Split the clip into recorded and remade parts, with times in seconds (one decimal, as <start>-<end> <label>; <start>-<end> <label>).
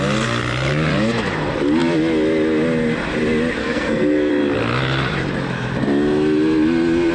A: 0.0-3.6 recorded; 3.6-4.3 remade; 4.3-7.1 recorded